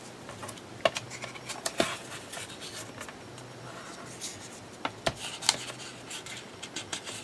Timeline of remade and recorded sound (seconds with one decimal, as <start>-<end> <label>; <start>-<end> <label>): 0.0-7.2 recorded